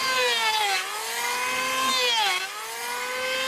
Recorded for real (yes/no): yes